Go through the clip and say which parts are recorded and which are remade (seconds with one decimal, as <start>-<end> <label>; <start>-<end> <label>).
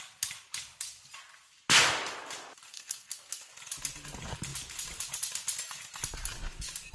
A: 0.0-2.7 recorded; 2.7-3.5 remade; 3.5-6.9 recorded